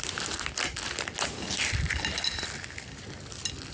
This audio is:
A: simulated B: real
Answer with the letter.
B